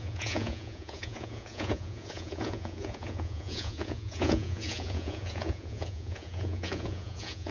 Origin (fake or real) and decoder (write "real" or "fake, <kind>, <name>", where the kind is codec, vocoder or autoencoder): fake, vocoder, Vocos